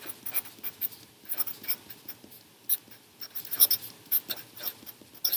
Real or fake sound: real